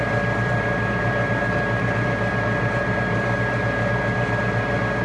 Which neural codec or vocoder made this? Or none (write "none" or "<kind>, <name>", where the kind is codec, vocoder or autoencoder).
none